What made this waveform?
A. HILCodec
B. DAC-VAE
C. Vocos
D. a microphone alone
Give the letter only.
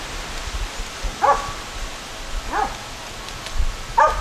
D